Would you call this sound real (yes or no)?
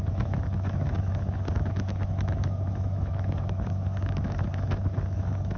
no